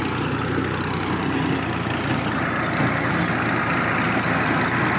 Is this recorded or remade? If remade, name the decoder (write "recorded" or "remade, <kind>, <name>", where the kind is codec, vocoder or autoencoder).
recorded